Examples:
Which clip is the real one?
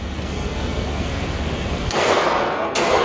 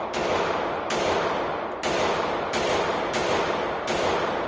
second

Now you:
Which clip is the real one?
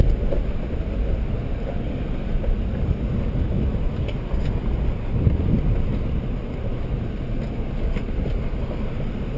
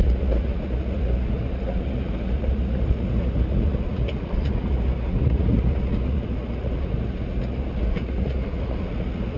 first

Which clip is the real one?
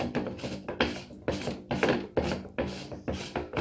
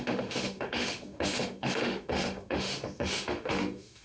first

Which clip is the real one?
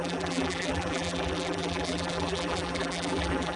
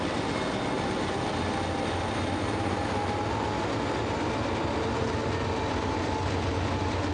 second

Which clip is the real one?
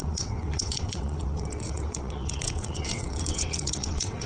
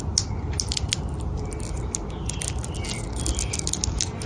second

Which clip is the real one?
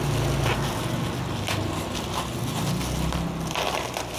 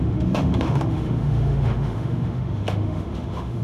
first